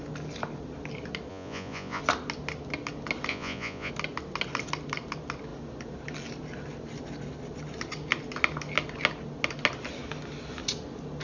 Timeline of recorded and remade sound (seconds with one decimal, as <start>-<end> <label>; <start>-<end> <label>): 0.0-1.3 recorded; 1.3-2.0 remade; 2.0-3.3 recorded; 3.3-3.9 remade; 3.9-11.2 recorded